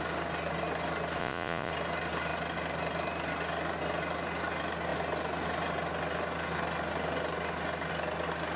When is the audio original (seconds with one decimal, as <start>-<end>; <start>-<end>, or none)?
0.0-1.2; 1.7-8.6